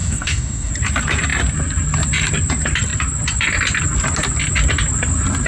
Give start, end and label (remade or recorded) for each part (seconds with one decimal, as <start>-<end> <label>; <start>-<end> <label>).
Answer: 0.0-0.7 remade; 0.7-5.5 recorded